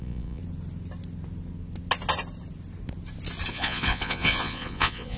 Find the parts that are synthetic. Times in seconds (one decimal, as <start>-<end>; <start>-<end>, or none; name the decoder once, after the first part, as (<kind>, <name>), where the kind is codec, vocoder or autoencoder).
0.0-0.4 (vocoder, Vocos); 3.5-5.2